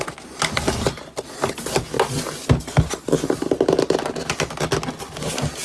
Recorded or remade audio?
recorded